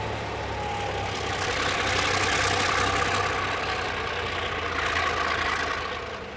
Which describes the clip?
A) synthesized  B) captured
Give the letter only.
B